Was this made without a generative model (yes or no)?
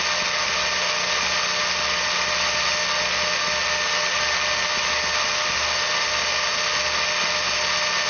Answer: yes